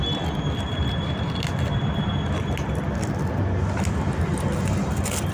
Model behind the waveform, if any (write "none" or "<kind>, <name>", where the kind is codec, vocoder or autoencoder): none